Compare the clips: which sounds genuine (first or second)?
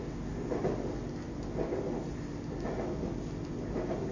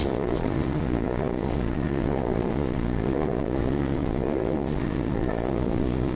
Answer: first